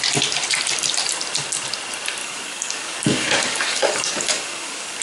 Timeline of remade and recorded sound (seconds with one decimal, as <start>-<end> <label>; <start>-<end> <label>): 0.0-2.2 recorded; 2.2-5.0 remade